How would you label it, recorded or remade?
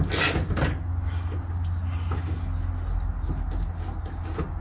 recorded